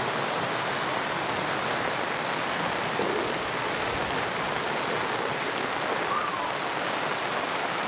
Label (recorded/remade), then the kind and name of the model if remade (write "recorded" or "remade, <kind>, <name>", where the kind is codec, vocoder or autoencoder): recorded